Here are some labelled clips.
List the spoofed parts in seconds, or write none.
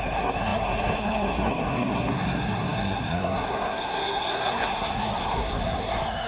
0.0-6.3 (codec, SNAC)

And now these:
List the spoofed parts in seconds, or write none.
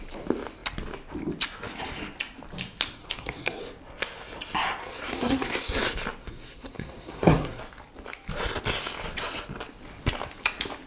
2.9-3.6 (codec, SNAC); 4.8-5.8; 6.2-7.6